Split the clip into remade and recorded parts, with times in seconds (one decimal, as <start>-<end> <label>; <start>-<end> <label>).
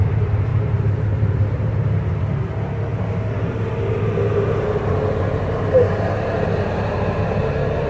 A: 0.0-0.5 recorded; 0.5-1.7 remade; 1.7-7.9 recorded